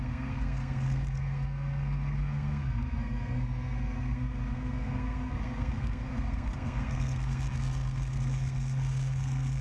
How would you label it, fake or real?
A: fake